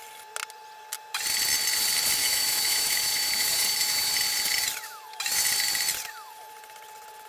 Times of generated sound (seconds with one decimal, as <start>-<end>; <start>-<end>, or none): 2.2-4.1